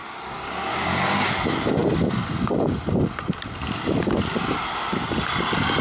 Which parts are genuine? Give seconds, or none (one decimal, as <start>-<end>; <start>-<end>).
0.0-0.7; 1.3-5.8